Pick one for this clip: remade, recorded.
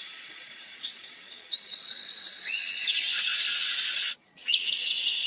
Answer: remade